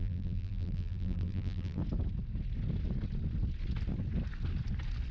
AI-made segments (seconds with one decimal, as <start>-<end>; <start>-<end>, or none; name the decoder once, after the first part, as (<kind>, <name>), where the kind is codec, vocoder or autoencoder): 0.0-1.8 (vocoder, BigVGAN v2)